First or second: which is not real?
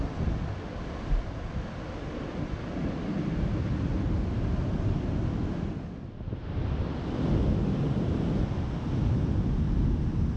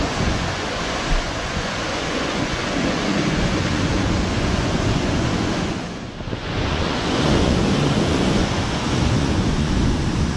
second